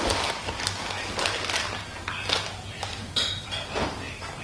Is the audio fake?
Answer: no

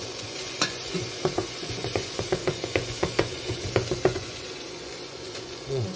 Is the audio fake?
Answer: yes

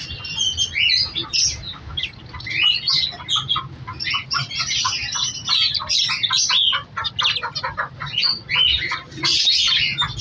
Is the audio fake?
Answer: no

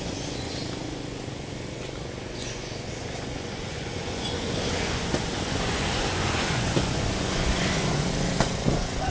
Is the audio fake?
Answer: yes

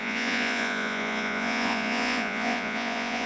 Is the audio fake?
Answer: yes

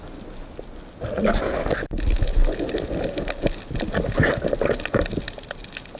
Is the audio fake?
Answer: no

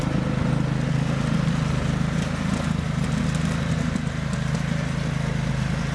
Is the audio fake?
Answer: no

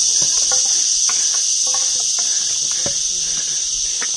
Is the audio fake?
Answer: no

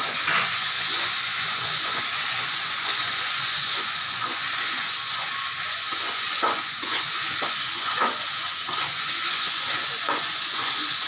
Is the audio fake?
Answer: yes